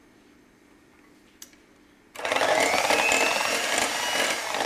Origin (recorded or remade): recorded